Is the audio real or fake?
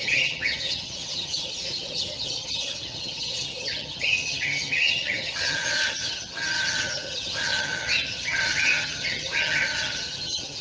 fake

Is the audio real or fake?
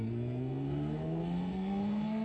fake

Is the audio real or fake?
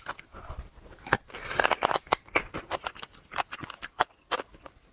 real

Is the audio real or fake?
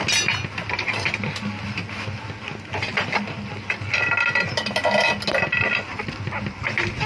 real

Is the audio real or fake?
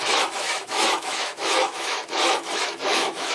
fake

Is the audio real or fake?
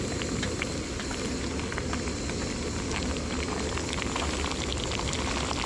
real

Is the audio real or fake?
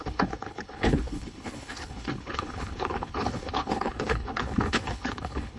fake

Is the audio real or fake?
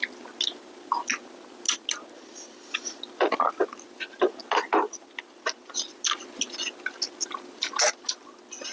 real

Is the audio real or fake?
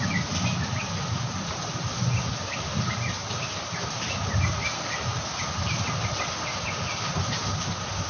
real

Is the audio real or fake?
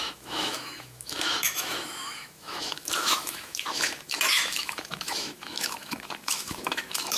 fake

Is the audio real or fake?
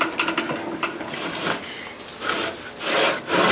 real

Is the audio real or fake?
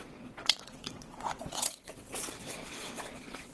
fake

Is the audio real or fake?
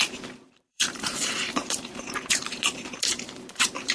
fake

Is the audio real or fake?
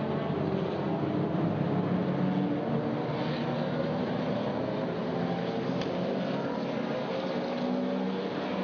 real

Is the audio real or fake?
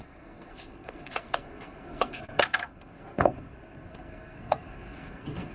fake